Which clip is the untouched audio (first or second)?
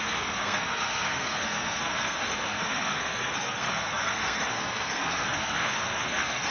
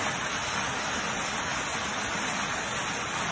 second